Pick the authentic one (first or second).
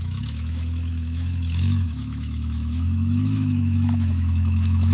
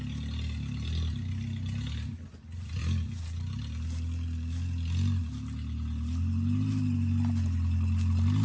second